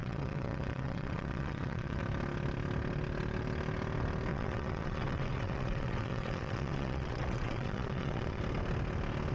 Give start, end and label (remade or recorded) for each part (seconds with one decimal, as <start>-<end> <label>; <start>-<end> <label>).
0.0-2.0 remade; 2.0-4.3 recorded; 4.3-8.4 remade; 8.4-9.3 recorded